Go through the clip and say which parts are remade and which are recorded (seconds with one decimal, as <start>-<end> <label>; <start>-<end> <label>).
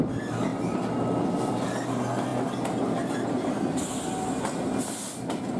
0.0-5.6 recorded